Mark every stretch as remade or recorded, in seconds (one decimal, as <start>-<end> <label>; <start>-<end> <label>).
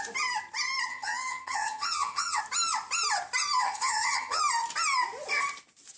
0.0-0.9 recorded; 0.9-2.4 remade; 2.4-3.6 recorded; 3.6-4.4 remade; 4.4-6.0 recorded